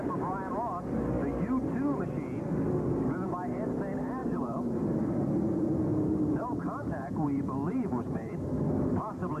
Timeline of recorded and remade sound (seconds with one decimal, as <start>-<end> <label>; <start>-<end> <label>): 0.0-4.2 recorded; 4.2-5.3 remade; 5.3-5.9 recorded; 5.9-8.3 remade; 8.3-9.4 recorded